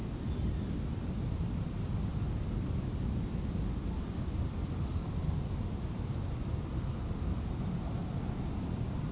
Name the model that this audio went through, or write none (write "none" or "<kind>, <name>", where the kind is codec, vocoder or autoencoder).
vocoder, BigVGAN v2